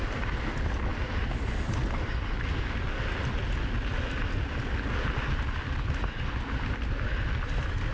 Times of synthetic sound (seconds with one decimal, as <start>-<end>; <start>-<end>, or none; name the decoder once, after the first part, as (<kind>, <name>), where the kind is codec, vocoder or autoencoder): none